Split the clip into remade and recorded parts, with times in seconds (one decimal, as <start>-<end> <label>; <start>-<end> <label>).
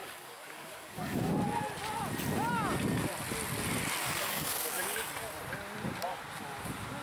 0.0-1.3 remade; 1.3-4.0 recorded; 4.0-5.1 remade; 5.1-7.0 recorded